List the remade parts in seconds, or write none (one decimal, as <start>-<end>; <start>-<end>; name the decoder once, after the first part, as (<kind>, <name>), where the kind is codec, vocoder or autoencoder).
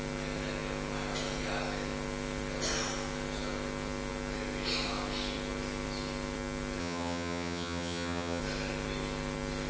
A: 6.8-8.4 (vocoder, HiFi-GAN)